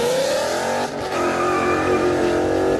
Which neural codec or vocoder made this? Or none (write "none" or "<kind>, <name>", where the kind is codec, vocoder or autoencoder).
none